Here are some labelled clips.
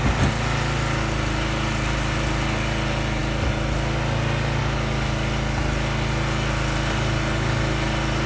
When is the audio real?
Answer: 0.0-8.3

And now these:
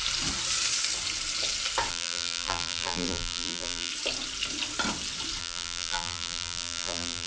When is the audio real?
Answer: 0.0-1.9; 3.9-5.4

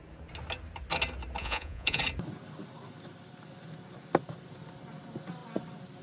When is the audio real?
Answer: 0.0-1.4; 2.0-6.0

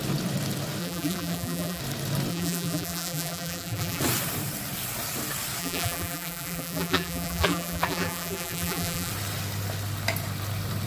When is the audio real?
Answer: 0.0-0.8; 1.8-2.3; 4.0-5.6; 9.1-10.9

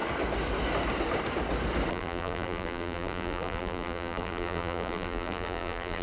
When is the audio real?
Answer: 0.0-1.9

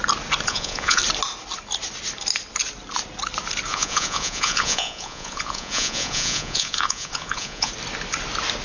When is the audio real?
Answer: 0.0-0.5; 1.0-3.7; 7.7-8.6

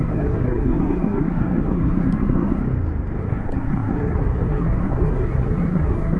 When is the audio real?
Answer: 2.6-3.2